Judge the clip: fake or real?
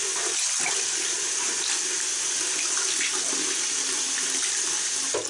real